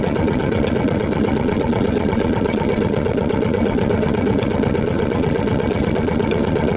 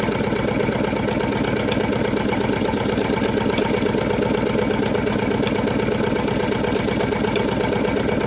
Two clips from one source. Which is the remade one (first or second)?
first